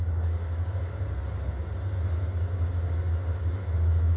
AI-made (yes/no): no